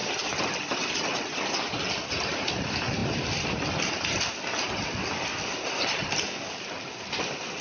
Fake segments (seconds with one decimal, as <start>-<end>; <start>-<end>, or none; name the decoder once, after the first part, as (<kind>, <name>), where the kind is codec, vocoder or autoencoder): none